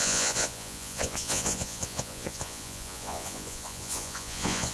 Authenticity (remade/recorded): remade